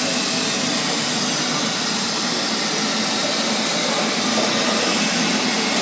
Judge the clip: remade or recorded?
recorded